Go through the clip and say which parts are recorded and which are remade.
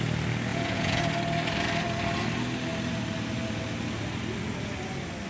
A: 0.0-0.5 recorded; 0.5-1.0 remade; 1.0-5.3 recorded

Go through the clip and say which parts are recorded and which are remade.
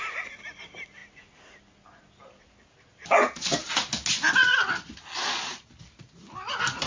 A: 0.0-6.9 recorded